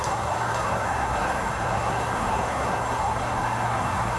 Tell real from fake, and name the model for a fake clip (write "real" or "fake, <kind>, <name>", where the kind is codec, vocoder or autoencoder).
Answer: fake, codec, SNAC